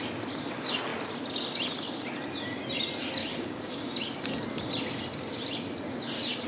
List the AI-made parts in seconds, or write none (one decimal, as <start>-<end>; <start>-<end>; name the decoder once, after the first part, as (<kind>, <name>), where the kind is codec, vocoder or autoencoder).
3.2-3.8 (codec, DAC)